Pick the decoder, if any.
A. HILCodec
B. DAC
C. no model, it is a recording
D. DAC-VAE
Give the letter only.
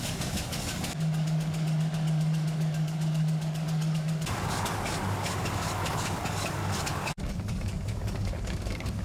B